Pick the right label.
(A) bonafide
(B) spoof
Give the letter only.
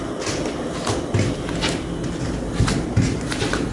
A